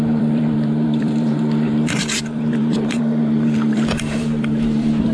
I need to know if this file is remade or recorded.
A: remade